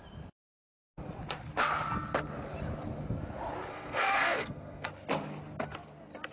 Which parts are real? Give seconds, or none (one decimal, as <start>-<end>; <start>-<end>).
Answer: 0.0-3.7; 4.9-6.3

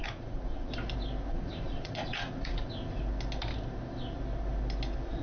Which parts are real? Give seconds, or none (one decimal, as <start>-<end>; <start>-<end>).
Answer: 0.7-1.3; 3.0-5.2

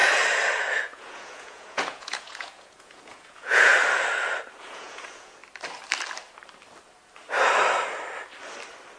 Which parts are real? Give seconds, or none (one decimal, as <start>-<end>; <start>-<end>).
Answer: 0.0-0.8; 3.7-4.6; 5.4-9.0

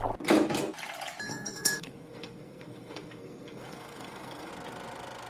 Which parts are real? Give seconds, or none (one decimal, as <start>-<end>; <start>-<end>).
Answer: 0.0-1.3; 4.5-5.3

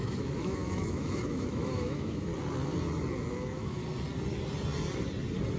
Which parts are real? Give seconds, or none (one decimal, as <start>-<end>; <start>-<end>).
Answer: 2.3-3.3; 3.8-5.6

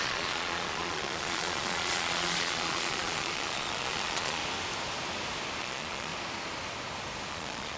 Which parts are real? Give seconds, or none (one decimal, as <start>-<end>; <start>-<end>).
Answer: 4.4-5.6; 6.1-7.3

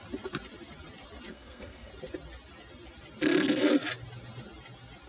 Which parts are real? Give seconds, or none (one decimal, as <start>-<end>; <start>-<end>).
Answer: 0.0-1.3; 1.9-5.1